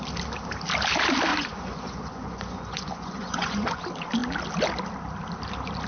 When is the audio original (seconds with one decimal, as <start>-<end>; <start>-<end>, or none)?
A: 0.0-1.3; 3.8-5.9